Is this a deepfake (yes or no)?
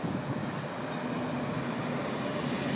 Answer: no